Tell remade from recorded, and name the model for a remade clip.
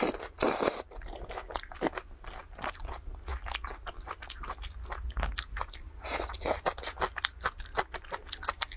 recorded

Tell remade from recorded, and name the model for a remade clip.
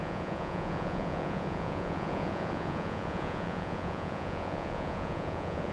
remade, vocoder, Vocos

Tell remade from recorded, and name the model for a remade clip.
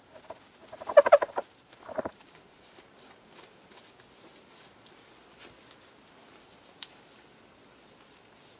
recorded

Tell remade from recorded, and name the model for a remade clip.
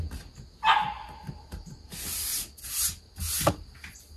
recorded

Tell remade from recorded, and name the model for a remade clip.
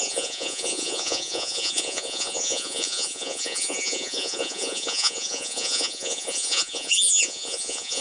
remade, vocoder, Vocos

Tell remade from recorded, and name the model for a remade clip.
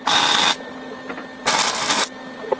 recorded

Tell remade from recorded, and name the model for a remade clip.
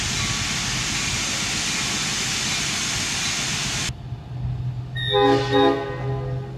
recorded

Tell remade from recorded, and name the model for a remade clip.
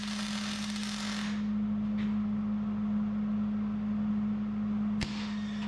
recorded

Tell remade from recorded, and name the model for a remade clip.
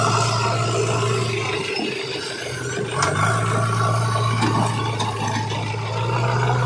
recorded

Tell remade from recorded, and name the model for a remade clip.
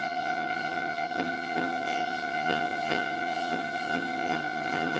remade, vocoder, HiFi-GAN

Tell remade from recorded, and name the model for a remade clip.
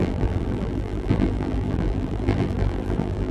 remade, vocoder, BigVGAN v2